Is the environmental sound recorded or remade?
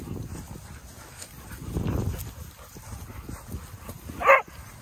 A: recorded